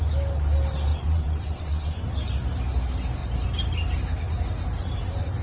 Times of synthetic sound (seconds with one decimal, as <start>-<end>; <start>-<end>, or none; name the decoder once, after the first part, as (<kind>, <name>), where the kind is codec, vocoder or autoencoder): 0.9-2.0 (vocoder, WaveNeXt)